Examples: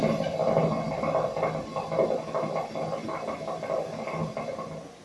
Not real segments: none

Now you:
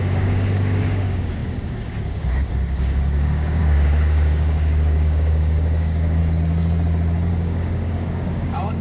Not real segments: 0.0-6.2 (codec, DAC); 7.3-8.8